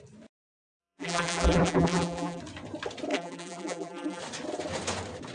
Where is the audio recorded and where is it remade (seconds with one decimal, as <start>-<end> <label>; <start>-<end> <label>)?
0.0-0.8 recorded; 0.8-2.4 remade; 2.4-3.1 recorded; 3.1-4.2 remade; 4.2-5.3 recorded